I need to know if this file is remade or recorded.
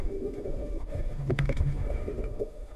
remade